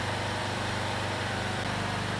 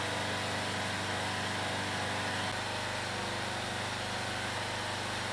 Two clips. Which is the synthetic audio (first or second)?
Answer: first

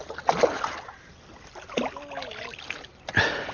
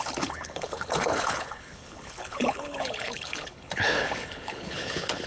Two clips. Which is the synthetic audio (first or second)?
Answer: second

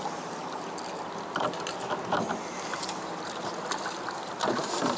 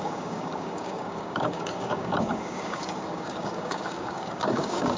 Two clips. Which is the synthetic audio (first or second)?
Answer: second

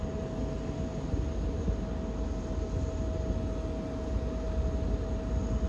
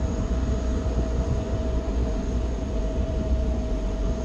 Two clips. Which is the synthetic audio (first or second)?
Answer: second